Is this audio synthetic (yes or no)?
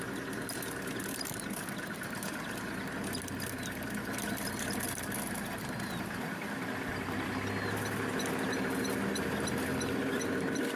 no